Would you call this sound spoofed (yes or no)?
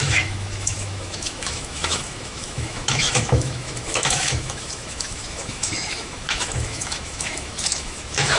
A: yes